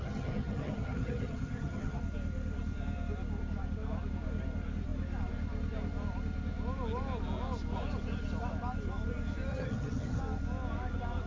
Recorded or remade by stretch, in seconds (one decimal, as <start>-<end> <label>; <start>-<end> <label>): 0.0-2.0 remade; 2.0-9.5 recorded; 9.5-10.2 remade; 10.2-11.3 recorded